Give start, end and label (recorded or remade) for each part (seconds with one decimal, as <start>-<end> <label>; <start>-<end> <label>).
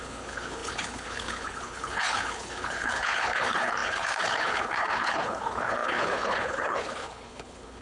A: 0.0-7.8 remade